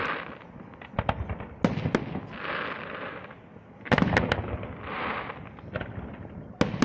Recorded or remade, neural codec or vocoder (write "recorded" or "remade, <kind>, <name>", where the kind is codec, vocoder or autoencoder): recorded